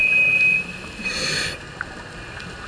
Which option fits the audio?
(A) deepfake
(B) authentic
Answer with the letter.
B